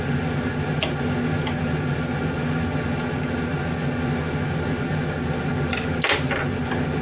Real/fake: real